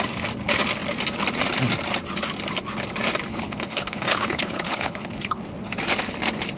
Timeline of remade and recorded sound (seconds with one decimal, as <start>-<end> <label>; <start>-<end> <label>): 0.0-3.3 recorded; 3.3-5.4 remade; 5.4-6.6 recorded